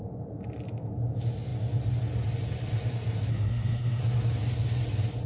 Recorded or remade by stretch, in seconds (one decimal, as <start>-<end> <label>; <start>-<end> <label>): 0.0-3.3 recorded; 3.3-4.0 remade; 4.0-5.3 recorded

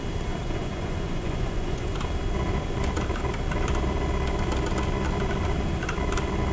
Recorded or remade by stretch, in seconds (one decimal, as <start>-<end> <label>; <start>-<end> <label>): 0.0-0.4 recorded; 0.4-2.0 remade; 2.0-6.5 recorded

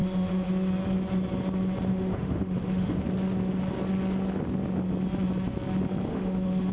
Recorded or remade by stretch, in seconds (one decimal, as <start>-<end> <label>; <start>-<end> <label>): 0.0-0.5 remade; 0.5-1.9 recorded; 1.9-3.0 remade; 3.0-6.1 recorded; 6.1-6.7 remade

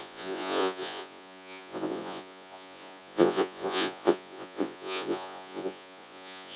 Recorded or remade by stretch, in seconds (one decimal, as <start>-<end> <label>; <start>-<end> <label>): 0.0-6.6 remade